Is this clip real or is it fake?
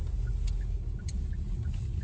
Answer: real